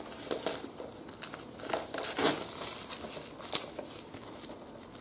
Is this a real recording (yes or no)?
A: yes